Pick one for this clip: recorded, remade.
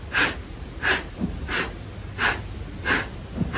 recorded